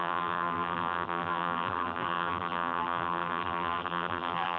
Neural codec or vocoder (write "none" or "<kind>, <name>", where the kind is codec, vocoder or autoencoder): vocoder, BigVGAN v2